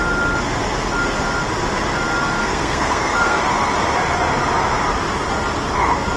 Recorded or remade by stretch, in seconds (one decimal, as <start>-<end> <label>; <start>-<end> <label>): 0.0-2.4 recorded; 2.4-3.4 remade; 3.4-6.2 recorded